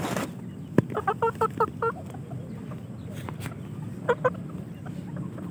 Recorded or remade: recorded